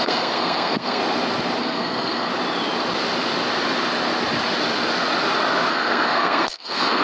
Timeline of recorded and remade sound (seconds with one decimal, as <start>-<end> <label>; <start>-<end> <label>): 0.0-1.0 remade; 1.0-1.6 recorded; 1.6-2.3 remade; 2.3-5.7 recorded; 5.7-7.0 remade